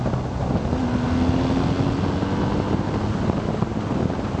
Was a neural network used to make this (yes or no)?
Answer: no